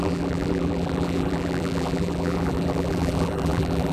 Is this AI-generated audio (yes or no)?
yes